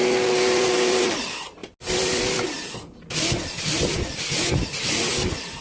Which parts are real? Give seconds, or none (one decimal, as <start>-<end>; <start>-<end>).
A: 0.0-5.6